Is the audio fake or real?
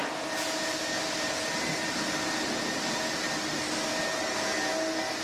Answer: real